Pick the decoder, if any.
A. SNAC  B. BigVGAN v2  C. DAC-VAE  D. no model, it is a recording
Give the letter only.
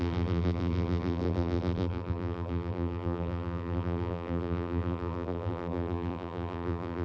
B